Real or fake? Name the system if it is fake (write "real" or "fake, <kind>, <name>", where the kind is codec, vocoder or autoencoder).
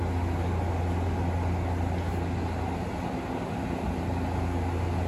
real